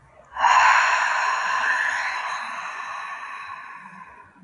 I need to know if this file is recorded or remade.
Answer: remade